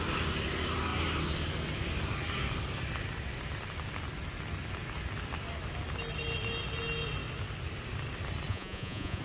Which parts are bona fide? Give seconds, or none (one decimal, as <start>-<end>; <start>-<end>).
0.0-8.5